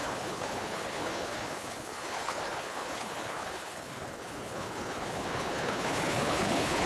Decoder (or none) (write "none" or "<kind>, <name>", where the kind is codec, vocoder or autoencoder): codec, HILCodec